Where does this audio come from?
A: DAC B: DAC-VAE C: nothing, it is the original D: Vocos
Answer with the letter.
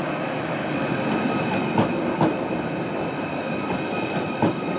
C